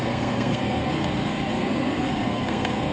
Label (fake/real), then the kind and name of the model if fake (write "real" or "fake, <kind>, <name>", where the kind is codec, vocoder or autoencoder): fake, codec, SNAC